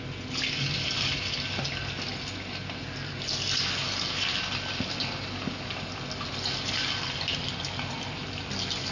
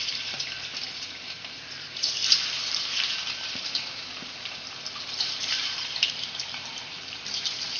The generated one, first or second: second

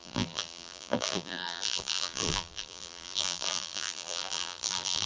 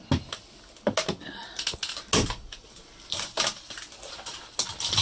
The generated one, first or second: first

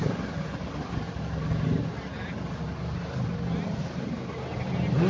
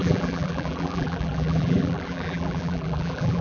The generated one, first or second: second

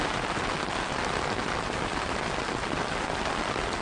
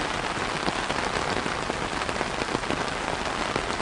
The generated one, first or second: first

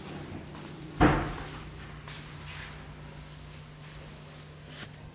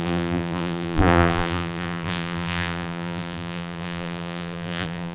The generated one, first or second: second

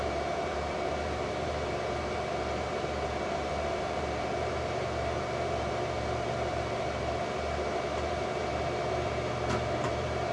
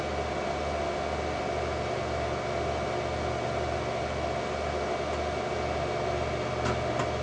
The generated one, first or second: first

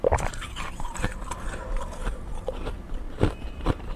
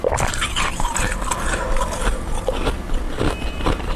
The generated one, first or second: first